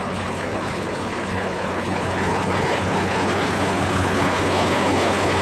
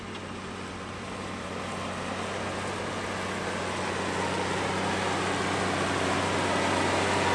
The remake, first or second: first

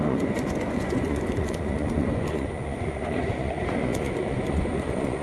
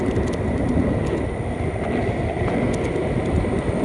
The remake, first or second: first